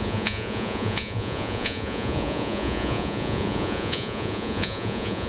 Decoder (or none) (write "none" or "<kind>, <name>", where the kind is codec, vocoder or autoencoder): vocoder, Vocos